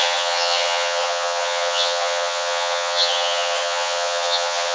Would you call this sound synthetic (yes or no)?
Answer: yes